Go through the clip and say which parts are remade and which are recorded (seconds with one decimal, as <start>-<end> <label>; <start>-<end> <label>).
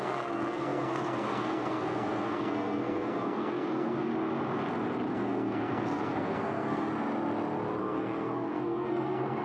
0.0-4.1 remade; 4.1-5.1 recorded; 5.1-6.9 remade; 6.9-7.8 recorded; 7.8-9.4 remade